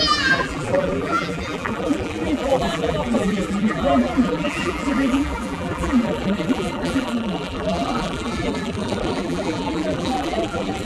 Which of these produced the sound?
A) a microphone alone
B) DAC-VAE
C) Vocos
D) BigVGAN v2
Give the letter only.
D